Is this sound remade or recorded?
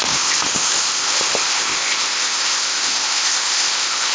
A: remade